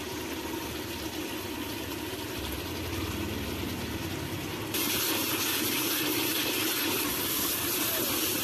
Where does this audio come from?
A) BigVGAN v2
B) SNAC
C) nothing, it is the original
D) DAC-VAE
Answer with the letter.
C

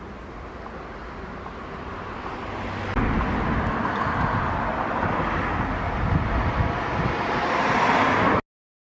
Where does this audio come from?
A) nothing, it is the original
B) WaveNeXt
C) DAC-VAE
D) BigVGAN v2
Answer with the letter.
A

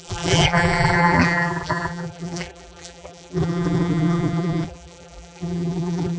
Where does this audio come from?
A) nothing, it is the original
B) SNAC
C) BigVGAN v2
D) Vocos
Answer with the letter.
C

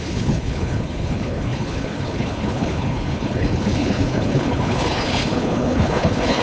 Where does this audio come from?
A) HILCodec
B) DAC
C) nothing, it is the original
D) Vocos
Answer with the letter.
A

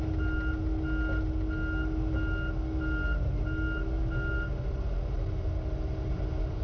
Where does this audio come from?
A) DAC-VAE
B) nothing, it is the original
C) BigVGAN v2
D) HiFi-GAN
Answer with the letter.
B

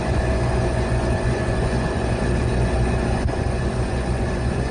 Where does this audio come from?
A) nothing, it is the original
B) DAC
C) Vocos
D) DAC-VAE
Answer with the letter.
C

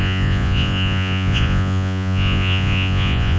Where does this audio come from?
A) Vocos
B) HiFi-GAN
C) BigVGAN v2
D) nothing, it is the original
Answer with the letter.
A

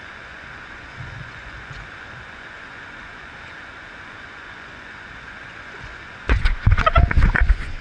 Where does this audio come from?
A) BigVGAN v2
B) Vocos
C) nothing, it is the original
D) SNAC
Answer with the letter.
B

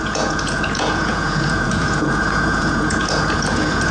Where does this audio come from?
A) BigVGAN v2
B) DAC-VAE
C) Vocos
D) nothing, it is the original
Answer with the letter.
C